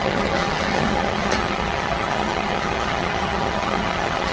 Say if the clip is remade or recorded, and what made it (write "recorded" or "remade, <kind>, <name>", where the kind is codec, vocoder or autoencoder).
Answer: remade, vocoder, HiFi-GAN